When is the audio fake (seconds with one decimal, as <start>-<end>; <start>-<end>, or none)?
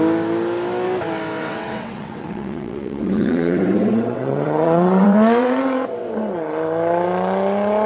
1.4-6.1